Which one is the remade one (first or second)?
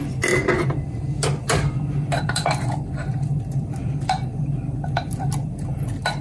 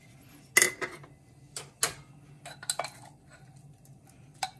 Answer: first